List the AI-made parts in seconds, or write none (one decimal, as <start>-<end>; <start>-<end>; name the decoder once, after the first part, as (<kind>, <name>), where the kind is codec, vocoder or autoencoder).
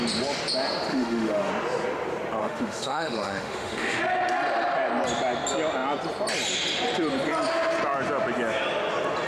0.9-1.5 (autoencoder, DAC-VAE); 2.4-4.0